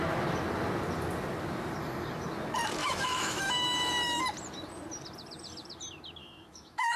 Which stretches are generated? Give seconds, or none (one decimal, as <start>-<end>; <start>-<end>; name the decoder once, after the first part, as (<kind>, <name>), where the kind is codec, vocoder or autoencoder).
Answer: 2.8-4.2 (autoencoder, DAC-VAE); 6.2-7.0